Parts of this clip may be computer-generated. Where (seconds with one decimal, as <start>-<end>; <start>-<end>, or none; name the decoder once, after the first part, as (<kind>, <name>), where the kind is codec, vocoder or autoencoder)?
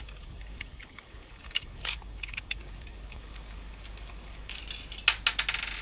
0.0-4.6 (codec, DAC)